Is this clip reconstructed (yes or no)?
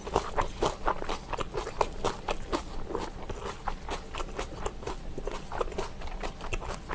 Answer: no